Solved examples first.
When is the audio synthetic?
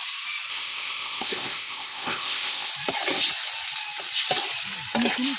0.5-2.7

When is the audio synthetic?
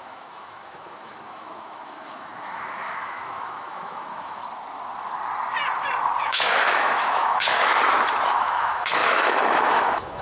0.0-4.4; 6.2-7.7; 8.4-10.2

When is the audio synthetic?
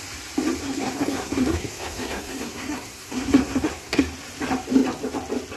0.6-4.0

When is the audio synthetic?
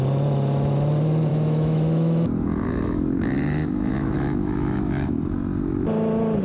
1.3-5.1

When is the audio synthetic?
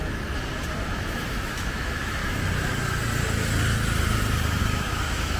0.9-2.2; 4.6-5.4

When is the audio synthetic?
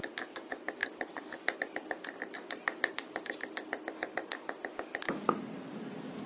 none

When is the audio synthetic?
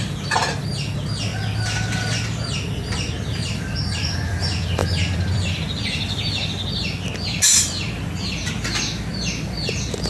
none